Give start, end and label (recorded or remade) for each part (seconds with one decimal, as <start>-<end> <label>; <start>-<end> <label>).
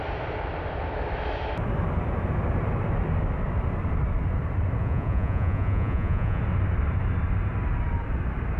0.0-4.8 recorded; 4.8-6.4 remade; 6.4-8.6 recorded